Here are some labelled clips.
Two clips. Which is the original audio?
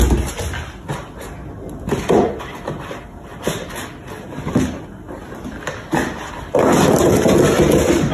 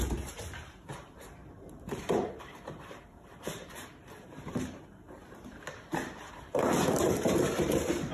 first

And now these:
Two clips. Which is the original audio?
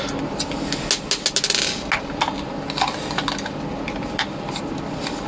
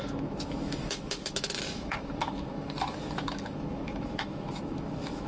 first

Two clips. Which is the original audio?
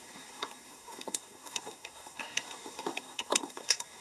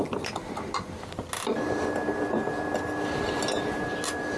second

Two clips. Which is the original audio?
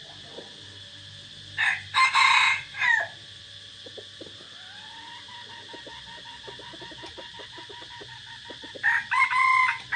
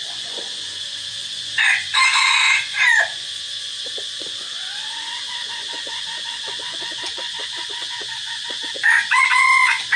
first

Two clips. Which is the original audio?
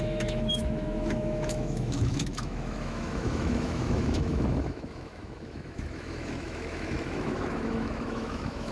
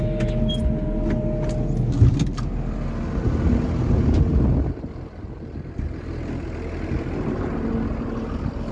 second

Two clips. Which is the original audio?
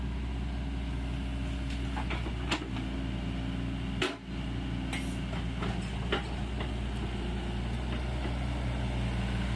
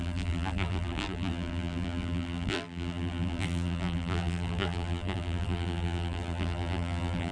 first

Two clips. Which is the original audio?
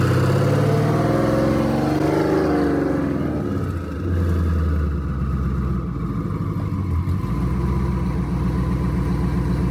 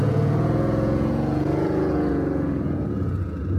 first